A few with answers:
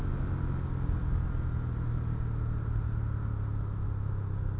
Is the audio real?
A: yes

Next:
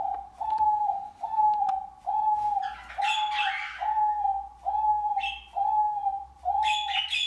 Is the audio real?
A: yes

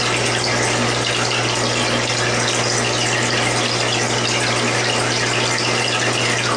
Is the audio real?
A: yes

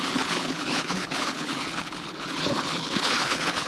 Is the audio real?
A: no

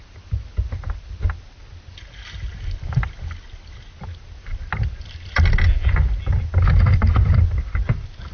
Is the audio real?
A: yes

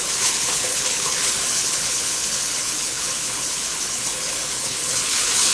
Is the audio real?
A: no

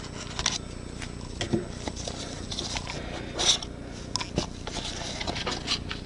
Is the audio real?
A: yes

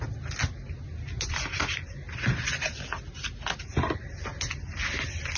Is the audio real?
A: yes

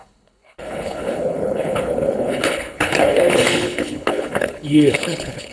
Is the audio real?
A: no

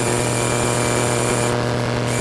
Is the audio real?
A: yes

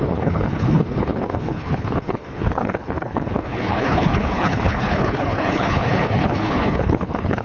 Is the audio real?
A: no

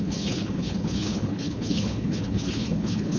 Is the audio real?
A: no